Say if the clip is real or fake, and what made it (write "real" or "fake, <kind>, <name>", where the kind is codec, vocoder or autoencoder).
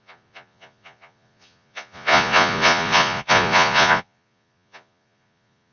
fake, vocoder, Vocos